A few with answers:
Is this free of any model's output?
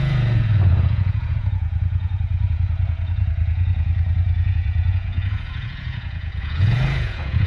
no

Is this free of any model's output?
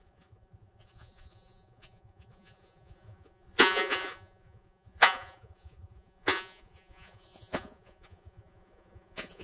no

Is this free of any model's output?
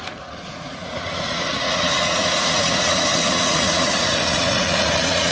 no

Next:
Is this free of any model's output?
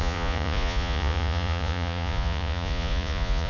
no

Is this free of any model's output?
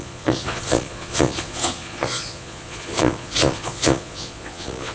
no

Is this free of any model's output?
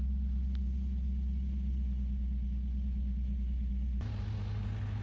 yes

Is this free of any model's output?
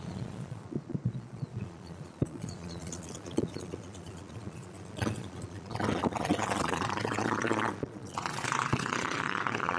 no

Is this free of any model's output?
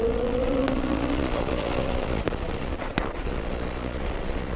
no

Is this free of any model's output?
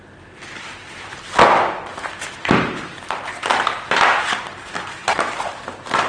yes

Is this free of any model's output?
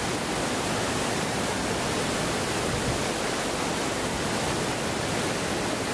yes